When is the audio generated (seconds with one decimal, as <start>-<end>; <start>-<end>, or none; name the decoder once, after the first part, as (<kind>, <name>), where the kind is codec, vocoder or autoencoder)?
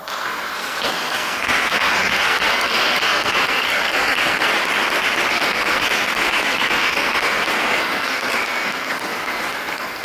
0.0-4.5 (codec, SNAC); 5.3-10.0